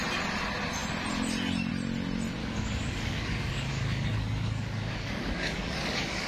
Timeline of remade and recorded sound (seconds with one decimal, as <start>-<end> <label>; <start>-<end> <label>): 0.0-2.4 recorded; 2.4-6.3 remade